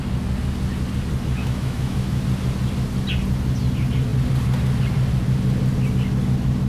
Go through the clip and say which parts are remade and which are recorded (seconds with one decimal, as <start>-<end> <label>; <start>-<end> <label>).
0.0-1.4 recorded; 1.4-2.2 remade; 2.2-6.7 recorded